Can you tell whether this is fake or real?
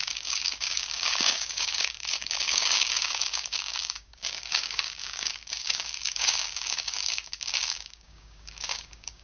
fake